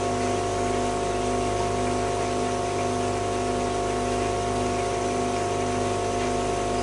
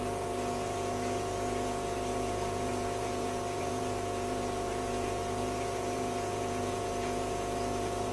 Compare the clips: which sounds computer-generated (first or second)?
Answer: second